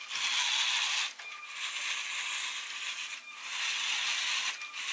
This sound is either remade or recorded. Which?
recorded